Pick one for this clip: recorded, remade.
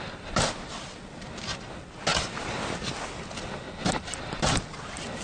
recorded